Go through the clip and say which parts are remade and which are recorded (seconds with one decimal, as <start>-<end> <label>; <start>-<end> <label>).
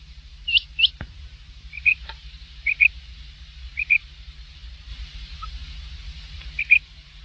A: 0.0-7.2 remade